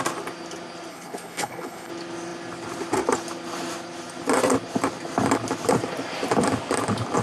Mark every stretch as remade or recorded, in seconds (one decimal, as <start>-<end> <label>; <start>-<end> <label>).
0.0-0.9 recorded; 0.9-1.9 remade; 1.9-7.2 recorded